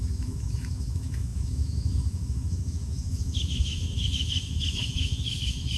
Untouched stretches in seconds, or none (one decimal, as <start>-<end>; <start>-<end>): none